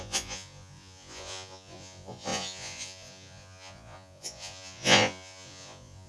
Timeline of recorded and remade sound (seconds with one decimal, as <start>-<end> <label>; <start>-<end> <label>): 0.0-6.1 remade